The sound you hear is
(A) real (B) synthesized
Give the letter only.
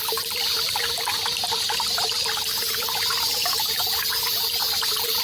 A